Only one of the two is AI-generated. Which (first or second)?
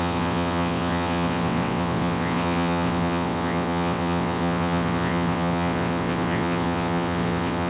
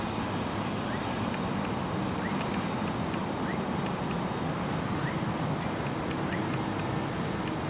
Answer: first